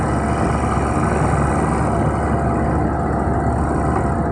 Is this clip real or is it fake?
real